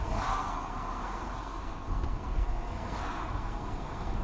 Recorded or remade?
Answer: remade